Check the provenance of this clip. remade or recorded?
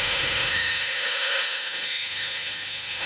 remade